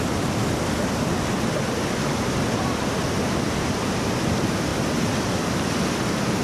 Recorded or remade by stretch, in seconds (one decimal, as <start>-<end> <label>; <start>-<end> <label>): 0.0-6.4 recorded